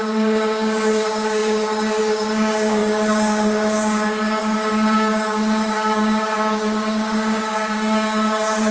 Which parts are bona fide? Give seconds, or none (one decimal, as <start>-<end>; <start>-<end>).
none